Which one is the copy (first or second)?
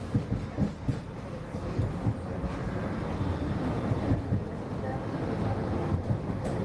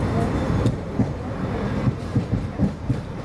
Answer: second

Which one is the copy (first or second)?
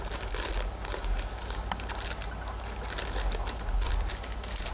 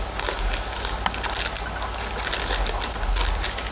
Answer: first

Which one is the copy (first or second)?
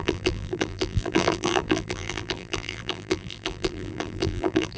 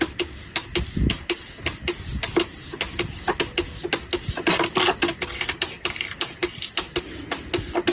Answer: first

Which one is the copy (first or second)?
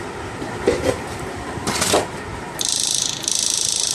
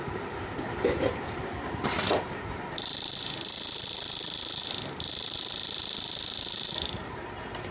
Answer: second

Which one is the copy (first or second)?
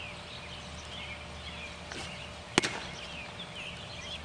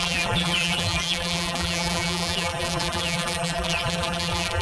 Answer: second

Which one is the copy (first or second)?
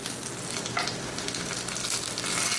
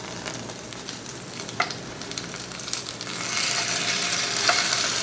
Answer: second